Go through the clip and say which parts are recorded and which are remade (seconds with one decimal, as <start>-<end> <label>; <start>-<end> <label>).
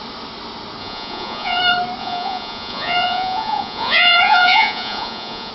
0.0-0.8 recorded; 0.8-1.6 remade; 1.6-2.0 recorded; 2.0-5.5 remade